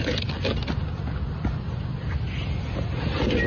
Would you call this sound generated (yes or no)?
no